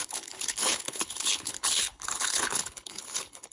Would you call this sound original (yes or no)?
no